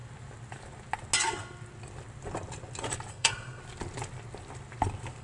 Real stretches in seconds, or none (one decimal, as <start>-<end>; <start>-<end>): 0.0-3.1; 3.6-5.2